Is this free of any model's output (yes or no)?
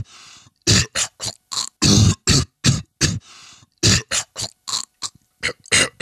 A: yes